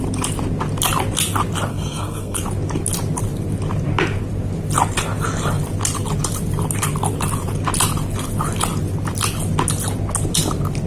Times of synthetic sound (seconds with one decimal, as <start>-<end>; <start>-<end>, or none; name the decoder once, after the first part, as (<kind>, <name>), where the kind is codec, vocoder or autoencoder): 1.7-2.4 (codec, SNAC)